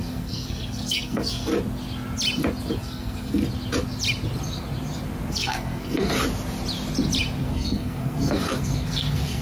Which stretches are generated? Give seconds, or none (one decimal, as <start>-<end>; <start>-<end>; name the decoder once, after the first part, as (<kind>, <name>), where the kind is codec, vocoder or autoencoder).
0.0-1.5 (codec, SNAC); 2.8-3.4; 5.3-6.1; 7.4-9.4